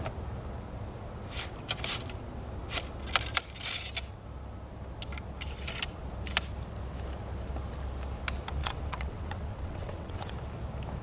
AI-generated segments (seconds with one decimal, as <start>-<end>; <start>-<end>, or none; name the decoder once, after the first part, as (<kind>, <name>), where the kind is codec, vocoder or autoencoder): 8.6-10.3 (vocoder, WaveNeXt)